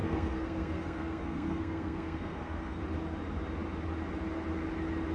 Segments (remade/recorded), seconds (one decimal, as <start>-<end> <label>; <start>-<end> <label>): 0.0-2.8 remade; 2.8-5.1 recorded